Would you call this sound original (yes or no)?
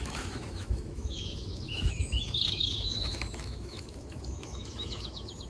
no